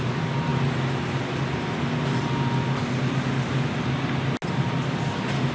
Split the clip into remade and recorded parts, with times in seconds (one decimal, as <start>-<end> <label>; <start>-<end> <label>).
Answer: 0.0-5.5 recorded